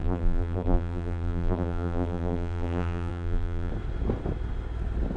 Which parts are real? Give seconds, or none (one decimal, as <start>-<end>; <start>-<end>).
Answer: 3.7-5.2